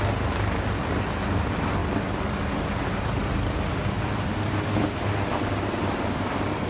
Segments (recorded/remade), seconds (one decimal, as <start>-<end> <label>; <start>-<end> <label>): 0.0-6.7 recorded